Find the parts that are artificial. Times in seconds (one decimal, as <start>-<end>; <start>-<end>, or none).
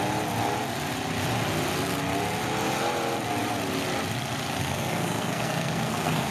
4.6-6.3